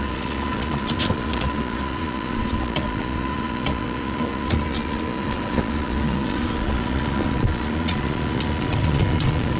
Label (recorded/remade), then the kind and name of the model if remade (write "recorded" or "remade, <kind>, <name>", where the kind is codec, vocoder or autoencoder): remade, vocoder, Vocos